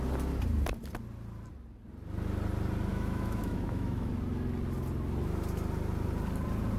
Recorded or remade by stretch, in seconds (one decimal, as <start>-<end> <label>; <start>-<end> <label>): 0.0-2.9 recorded; 2.9-4.1 remade; 4.1-6.8 recorded